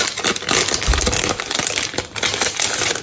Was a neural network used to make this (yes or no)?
no